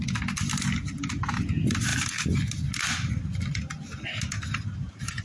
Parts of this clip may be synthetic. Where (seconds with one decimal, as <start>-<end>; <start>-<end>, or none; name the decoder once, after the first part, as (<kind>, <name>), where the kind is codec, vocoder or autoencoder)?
none